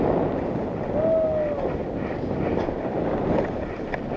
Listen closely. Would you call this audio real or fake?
real